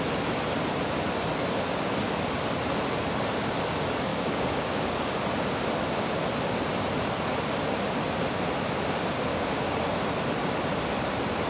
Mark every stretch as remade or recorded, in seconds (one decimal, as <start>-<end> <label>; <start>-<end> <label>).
0.0-4.1 recorded; 4.1-5.1 remade; 5.1-9.3 recorded; 9.3-10.0 remade; 10.0-11.5 recorded